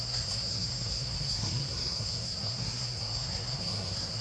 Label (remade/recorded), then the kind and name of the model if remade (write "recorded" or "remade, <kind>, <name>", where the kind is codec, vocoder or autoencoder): remade, codec, SNAC